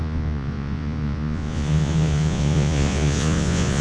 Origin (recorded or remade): remade